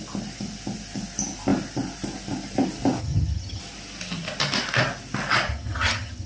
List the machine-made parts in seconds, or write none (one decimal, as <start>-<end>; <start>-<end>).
3.0-3.6; 5.5-6.3